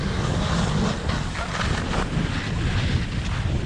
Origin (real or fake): real